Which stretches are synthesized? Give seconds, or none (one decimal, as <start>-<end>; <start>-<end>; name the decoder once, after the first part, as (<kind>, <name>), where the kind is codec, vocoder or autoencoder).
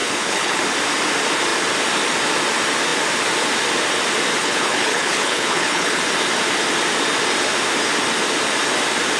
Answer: 0.0-0.6 (codec, HILCodec); 4.4-6.0